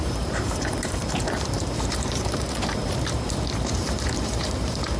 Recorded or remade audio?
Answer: remade